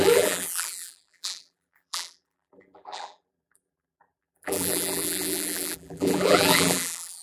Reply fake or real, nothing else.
fake